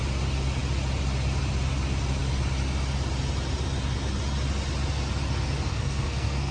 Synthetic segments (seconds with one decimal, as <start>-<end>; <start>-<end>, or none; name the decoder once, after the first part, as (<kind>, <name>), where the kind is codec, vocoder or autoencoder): 5.7-6.5 (codec, SNAC)